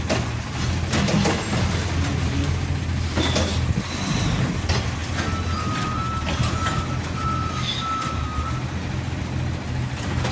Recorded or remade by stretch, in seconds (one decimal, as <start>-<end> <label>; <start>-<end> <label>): 0.0-10.3 recorded